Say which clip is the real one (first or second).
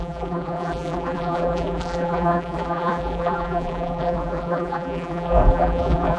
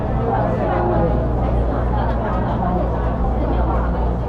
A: second